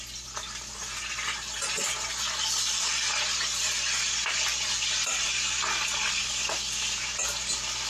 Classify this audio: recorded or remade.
recorded